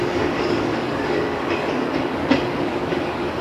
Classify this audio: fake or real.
fake